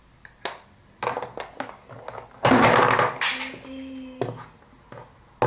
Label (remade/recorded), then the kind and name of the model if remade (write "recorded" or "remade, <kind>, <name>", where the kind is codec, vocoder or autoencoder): recorded